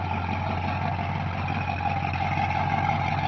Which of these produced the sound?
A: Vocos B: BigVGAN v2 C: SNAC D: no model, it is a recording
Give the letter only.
B